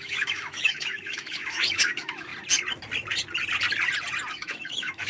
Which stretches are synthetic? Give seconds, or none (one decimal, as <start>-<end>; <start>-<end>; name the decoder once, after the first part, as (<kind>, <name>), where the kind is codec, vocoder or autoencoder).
0.0-2.3 (autoencoder, DAC-VAE); 4.3-5.1